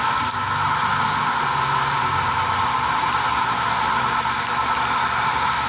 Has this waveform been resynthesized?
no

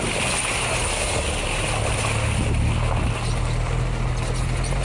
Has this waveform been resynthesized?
no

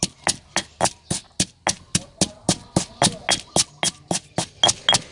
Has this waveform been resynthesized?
no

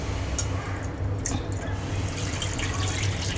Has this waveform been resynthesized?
no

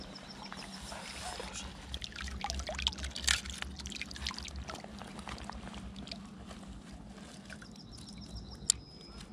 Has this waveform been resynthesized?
no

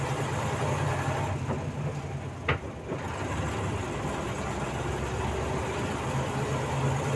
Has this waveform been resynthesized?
no